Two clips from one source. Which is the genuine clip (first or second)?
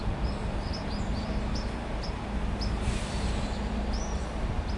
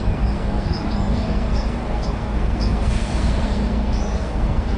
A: first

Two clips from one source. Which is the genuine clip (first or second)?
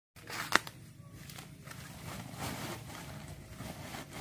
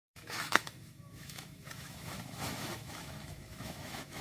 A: first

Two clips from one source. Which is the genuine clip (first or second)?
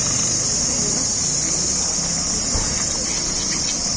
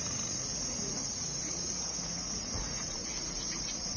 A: first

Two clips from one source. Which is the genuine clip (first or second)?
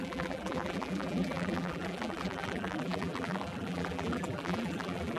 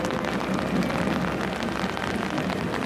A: second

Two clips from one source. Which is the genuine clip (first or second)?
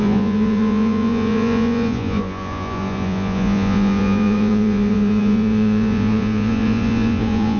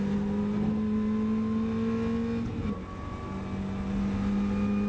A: second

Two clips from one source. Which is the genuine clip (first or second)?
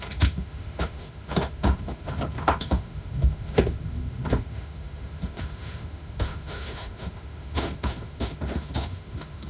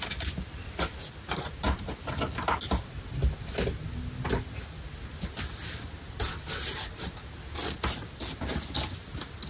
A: second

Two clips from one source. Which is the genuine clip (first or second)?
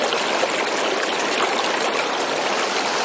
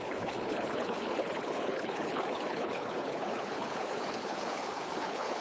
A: first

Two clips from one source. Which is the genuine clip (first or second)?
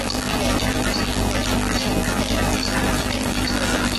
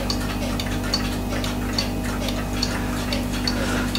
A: second